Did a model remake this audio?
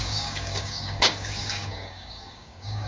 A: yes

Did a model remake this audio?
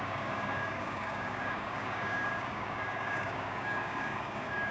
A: yes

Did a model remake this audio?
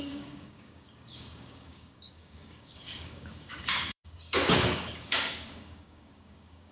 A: yes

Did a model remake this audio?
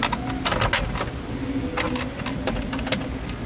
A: no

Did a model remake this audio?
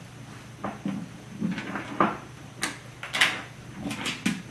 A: no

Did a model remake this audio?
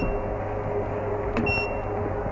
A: no